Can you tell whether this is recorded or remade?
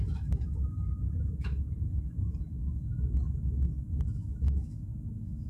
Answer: remade